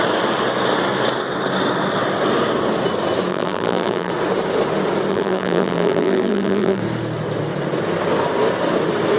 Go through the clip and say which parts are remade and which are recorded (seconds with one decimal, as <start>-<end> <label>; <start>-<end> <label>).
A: 0.0-3.3 recorded; 3.3-4.1 remade; 4.1-5.1 recorded; 5.1-6.8 remade; 6.8-9.2 recorded